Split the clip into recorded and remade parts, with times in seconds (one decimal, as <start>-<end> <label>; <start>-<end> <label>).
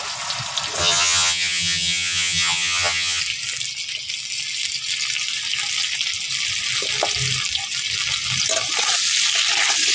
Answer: 0.0-0.8 recorded; 0.8-3.2 remade; 3.2-9.9 recorded